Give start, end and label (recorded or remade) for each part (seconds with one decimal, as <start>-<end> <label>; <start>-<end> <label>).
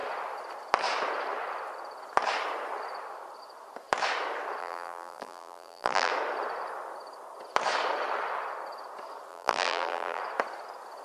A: 0.0-4.6 recorded; 4.6-6.1 remade; 6.1-9.3 recorded; 9.3-10.2 remade; 10.2-11.0 recorded